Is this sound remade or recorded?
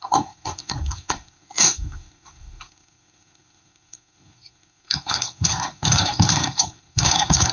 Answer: remade